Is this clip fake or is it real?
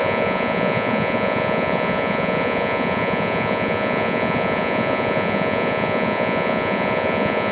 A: fake